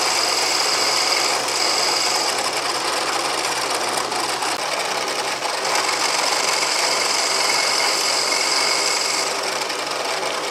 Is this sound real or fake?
real